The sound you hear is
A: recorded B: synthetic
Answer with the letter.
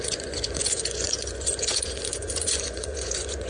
B